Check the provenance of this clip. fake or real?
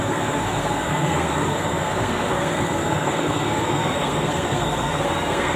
fake